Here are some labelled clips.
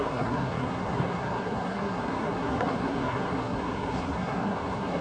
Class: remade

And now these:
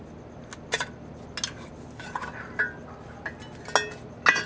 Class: recorded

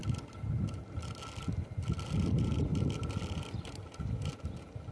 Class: recorded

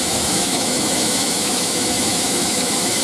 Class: remade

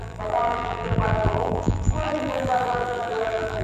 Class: remade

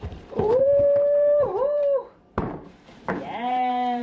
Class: remade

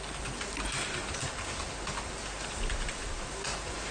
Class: recorded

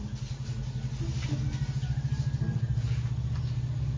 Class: recorded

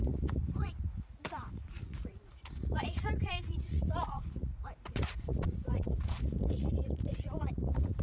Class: remade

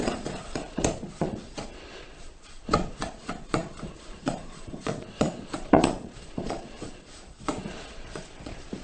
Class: remade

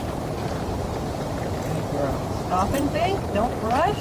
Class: remade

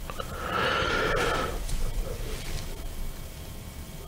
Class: recorded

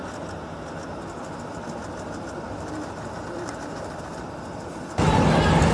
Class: recorded